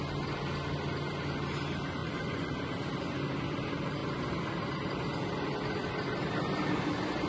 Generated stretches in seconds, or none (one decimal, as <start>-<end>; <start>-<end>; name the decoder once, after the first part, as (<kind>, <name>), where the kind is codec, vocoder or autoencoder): 2.0-2.5 (vocoder, Vocos)